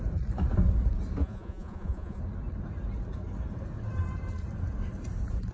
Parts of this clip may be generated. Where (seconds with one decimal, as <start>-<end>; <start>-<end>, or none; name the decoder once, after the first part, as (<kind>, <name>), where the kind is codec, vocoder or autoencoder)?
1.2-2.2 (vocoder, Vocos)

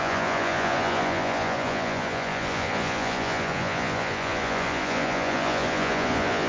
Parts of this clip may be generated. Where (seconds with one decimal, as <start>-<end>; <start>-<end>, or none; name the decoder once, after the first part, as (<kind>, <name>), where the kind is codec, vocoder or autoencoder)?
0.0-6.5 (vocoder, Vocos)

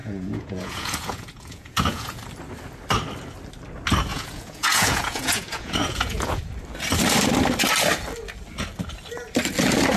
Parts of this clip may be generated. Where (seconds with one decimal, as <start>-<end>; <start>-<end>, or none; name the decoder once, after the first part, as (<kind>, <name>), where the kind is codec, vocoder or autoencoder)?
0.0-2.2 (vocoder, Vocos); 4.1-6.4

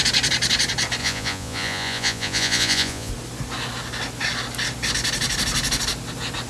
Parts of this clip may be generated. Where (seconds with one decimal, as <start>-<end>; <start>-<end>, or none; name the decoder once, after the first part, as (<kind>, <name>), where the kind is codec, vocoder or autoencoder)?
1.0-3.1 (vocoder, Vocos)